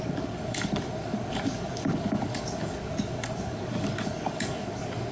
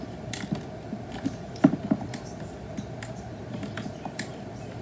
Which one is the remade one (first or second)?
first